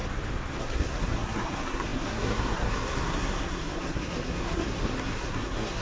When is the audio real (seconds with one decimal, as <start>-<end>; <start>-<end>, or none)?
0.0-0.6